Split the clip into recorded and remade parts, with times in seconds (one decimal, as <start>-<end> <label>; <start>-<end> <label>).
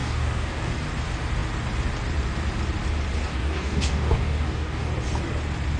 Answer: 0.0-0.7 remade; 0.7-3.3 recorded; 3.3-4.9 remade; 4.9-5.8 recorded